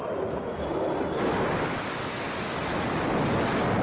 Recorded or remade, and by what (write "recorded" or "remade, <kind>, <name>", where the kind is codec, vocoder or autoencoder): recorded